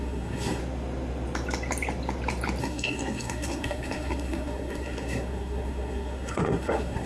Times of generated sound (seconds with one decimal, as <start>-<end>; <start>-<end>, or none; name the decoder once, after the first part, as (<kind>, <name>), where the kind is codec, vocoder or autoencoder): 0.0-0.6 (codec, SNAC); 2.6-7.1